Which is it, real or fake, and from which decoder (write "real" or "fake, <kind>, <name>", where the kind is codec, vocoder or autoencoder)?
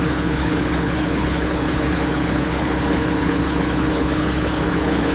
fake, codec, HILCodec